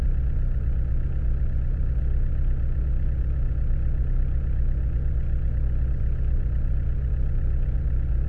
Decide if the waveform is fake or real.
fake